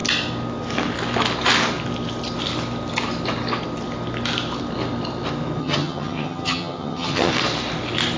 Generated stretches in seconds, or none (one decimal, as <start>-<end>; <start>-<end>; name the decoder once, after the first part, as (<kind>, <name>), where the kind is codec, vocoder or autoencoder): 5.6-7.3 (vocoder, HiFi-GAN)